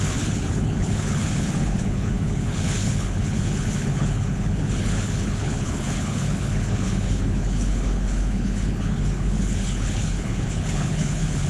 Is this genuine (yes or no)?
no